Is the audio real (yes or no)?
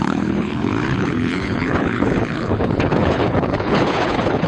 no